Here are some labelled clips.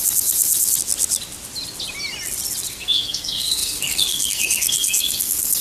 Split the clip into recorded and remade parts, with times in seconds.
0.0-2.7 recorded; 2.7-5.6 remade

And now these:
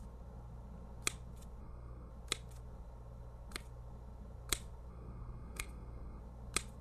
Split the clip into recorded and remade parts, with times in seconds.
0.0-1.6 recorded; 1.6-2.1 remade; 2.1-4.9 recorded; 4.9-6.2 remade; 6.2-6.8 recorded

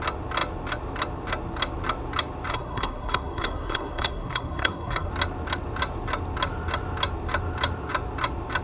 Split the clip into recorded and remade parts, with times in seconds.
0.0-2.5 recorded; 2.5-5.1 remade; 5.1-8.6 recorded

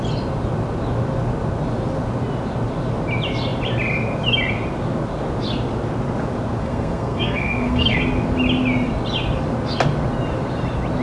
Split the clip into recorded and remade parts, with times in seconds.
0.0-6.6 recorded; 6.6-8.0 remade; 8.0-11.0 recorded

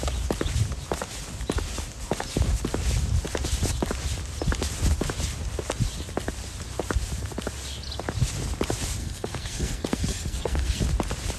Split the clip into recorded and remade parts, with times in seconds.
0.0-9.0 recorded; 9.0-10.8 remade; 10.8-11.4 recorded